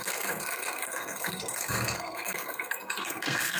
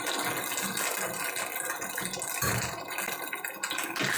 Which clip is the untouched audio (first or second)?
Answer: second